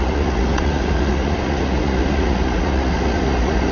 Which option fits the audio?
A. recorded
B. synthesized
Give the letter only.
B